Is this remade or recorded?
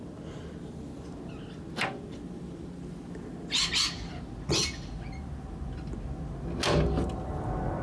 recorded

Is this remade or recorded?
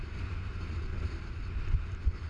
recorded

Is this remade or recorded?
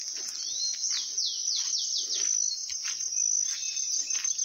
recorded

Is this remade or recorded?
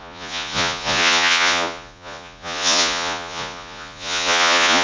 remade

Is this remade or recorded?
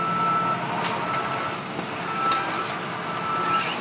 recorded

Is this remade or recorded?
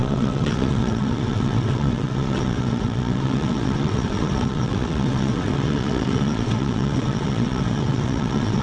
remade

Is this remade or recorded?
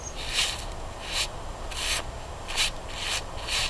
recorded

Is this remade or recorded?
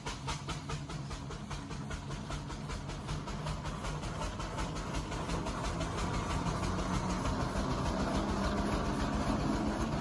recorded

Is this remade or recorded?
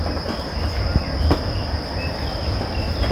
recorded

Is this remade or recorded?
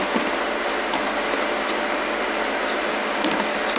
recorded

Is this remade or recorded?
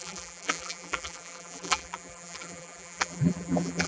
remade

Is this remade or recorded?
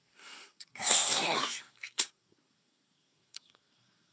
remade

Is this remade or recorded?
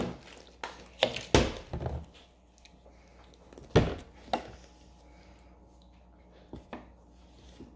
recorded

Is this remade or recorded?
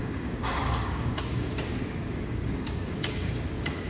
remade